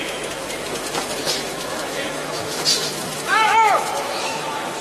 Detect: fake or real fake